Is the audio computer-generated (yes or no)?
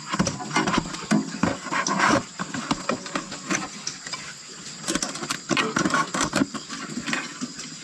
no